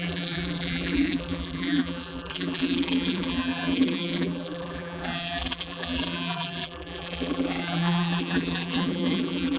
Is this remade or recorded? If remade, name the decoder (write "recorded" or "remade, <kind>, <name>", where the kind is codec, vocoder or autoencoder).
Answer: remade, vocoder, BigVGAN v2